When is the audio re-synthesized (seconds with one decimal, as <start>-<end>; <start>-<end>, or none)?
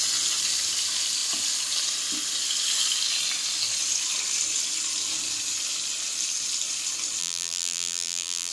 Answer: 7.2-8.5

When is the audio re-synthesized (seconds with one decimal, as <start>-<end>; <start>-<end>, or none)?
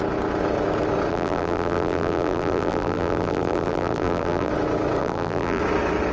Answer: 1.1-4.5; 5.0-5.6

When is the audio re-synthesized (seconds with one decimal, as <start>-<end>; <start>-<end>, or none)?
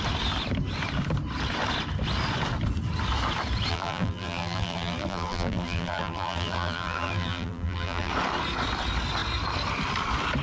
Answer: 3.7-8.1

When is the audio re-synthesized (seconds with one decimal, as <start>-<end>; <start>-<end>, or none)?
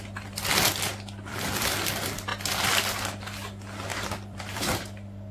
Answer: 1.3-1.9; 2.3-2.9; 3.9-5.3